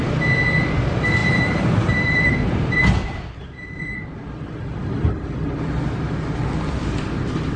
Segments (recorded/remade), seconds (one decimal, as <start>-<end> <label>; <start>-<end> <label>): 0.0-1.2 recorded; 1.2-4.0 remade; 4.0-7.6 recorded